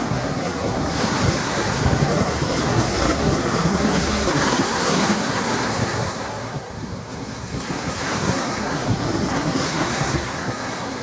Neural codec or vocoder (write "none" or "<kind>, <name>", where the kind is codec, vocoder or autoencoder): codec, SNAC